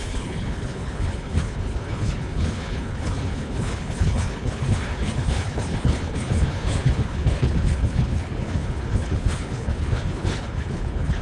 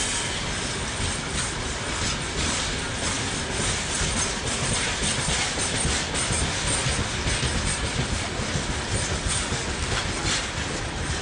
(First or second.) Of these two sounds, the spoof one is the first